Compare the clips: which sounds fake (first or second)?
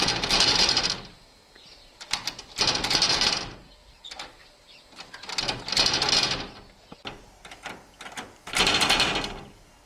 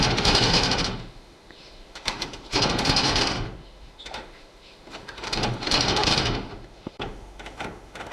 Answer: second